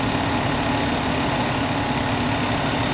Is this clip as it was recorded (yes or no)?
yes